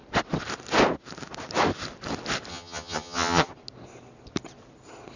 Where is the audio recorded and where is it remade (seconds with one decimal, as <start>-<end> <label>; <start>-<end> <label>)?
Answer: 0.0-2.5 recorded; 2.5-3.5 remade; 3.5-5.2 recorded